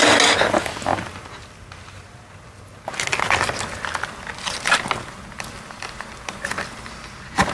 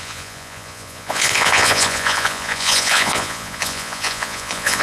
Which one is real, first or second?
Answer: first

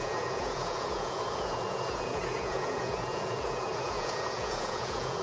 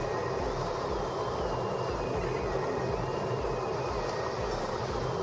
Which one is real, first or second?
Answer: second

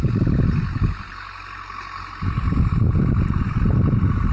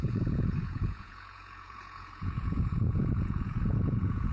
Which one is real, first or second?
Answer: first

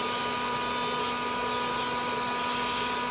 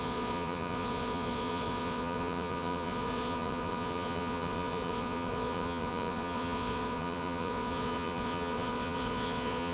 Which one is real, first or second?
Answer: first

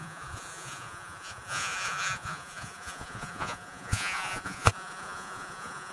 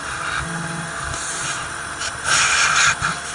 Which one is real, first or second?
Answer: second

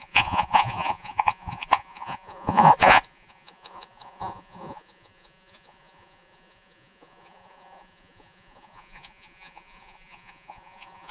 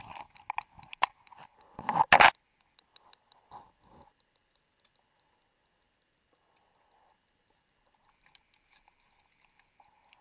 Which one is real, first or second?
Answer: second